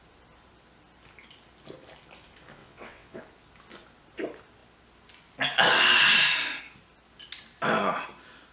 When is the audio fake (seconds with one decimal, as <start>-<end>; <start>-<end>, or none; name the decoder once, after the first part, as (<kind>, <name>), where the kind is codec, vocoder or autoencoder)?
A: 2.6-3.2 (vocoder, WaveNeXt)